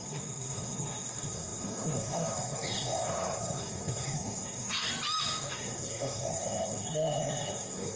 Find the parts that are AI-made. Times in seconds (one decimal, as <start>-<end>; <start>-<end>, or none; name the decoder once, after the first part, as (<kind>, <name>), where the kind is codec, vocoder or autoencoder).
0.0-4.9 (codec, SNAC); 5.5-8.0